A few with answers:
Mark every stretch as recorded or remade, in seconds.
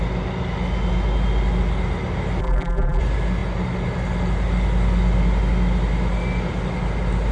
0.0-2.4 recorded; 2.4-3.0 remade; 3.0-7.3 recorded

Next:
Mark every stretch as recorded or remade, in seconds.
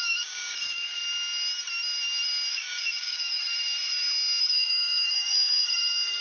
0.0-1.0 remade; 1.0-2.5 recorded; 2.5-3.5 remade; 3.5-4.4 recorded; 4.4-6.2 remade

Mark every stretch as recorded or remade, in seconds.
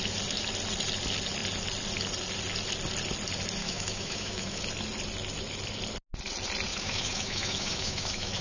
0.0-3.6 recorded; 3.6-4.6 remade; 4.6-6.7 recorded; 6.7-8.4 remade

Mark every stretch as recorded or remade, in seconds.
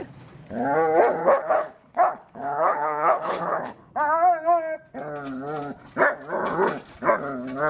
0.0-1.2 recorded; 1.2-3.9 remade; 3.9-7.7 recorded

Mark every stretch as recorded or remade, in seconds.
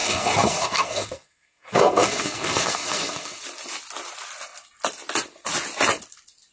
0.0-3.4 remade; 3.4-6.5 recorded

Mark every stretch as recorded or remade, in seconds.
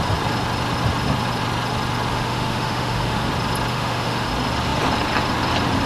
0.0-2.1 recorded; 2.1-3.3 remade; 3.3-3.7 recorded; 3.7-4.3 remade; 4.3-5.9 recorded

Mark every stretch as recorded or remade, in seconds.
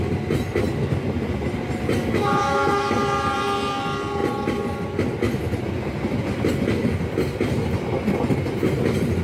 0.0-2.0 recorded; 2.0-2.9 remade; 2.9-9.2 recorded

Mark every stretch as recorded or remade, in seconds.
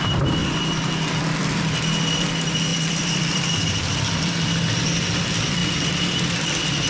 0.0-0.4 remade; 0.4-1.2 recorded; 1.2-5.6 remade; 5.6-6.9 recorded